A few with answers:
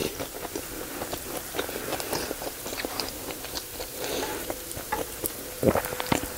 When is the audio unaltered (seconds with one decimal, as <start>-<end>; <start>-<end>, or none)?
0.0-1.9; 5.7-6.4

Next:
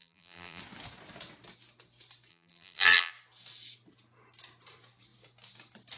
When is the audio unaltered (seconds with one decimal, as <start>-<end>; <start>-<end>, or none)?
0.6-2.3; 3.1-6.0

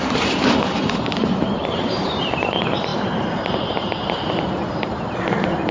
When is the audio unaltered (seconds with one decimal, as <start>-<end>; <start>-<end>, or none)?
none

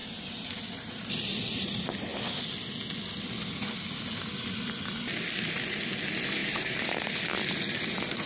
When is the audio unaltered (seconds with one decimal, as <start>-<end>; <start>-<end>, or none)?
1.0-6.4; 7.2-8.3